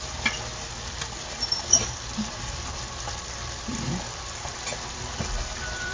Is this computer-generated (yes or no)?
yes